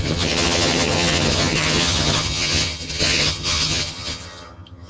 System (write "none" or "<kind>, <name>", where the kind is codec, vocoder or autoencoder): vocoder, HiFi-GAN